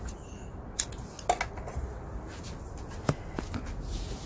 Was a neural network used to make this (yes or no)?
no